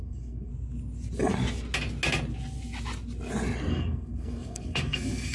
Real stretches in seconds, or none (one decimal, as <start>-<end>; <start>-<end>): 0.5-3.7